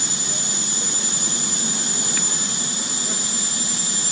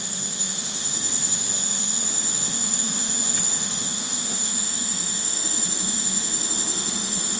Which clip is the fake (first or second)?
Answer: second